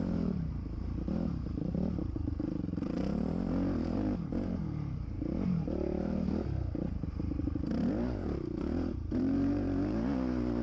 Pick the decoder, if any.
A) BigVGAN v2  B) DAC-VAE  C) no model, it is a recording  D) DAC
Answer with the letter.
A